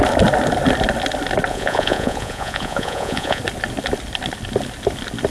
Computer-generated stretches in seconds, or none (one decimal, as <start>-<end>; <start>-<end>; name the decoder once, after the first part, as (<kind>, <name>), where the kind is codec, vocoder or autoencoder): 1.5-3.4 (vocoder, Vocos)